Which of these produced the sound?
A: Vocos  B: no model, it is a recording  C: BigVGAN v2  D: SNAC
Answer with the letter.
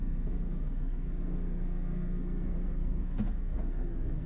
D